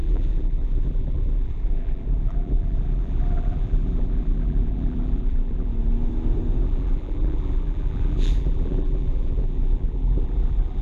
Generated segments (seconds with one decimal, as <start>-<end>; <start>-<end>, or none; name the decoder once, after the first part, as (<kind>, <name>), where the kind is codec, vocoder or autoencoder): 0.0-5.7 (vocoder, BigVGAN v2); 6.6-10.8